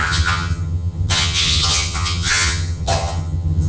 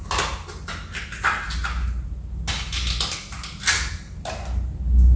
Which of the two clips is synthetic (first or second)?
first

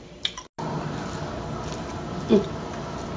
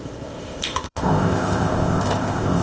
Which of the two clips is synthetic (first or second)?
second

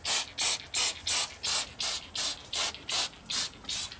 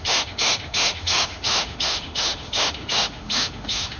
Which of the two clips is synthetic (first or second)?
second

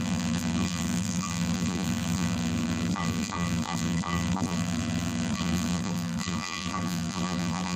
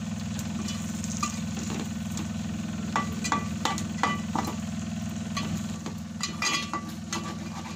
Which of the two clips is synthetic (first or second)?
first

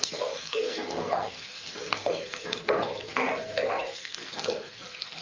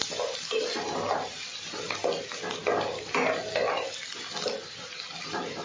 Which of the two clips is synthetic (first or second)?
first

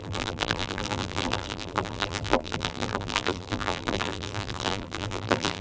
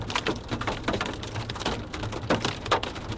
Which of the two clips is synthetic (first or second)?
first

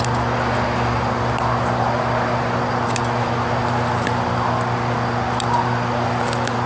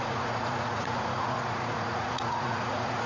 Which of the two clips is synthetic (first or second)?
second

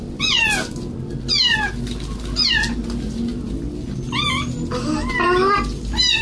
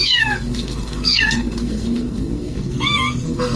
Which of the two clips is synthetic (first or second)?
second